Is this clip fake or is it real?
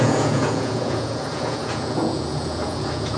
fake